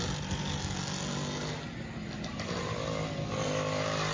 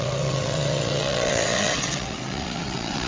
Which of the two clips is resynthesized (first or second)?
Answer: second